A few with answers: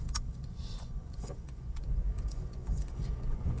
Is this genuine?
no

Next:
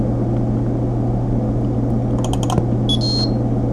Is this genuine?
yes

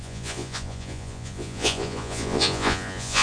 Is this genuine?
no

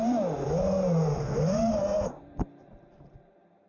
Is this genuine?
yes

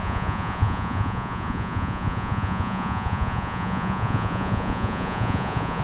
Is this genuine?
no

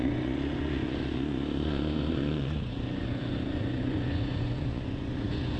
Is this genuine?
no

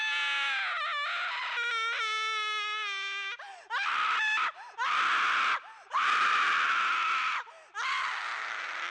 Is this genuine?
yes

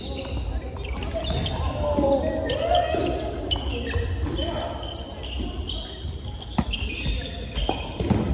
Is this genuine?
yes